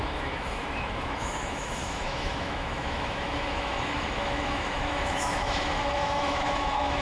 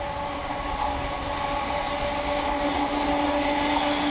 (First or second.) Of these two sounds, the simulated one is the first